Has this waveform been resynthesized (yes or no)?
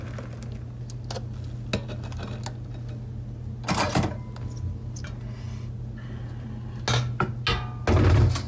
no